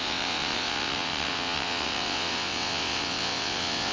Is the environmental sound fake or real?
fake